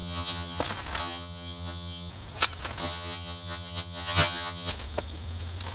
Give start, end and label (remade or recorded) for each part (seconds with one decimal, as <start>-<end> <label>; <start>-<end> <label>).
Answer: 0.0-0.6 remade; 0.6-1.0 recorded; 1.0-2.1 remade; 2.1-2.8 recorded; 2.8-4.7 remade; 4.7-5.7 recorded